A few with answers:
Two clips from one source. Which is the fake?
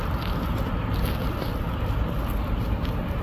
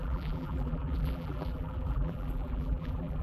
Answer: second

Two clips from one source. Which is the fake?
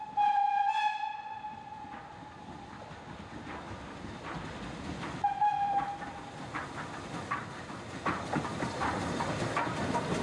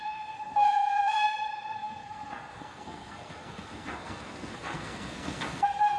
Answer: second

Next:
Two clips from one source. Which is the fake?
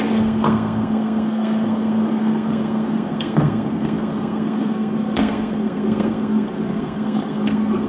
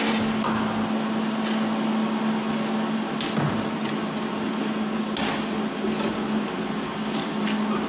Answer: first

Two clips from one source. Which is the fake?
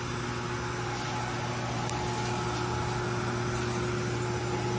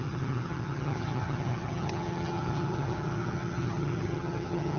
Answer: second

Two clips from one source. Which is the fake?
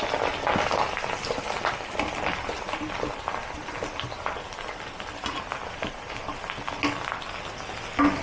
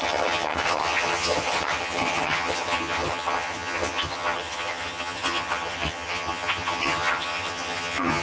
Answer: second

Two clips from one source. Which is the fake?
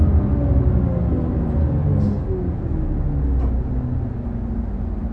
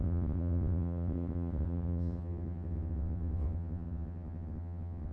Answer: second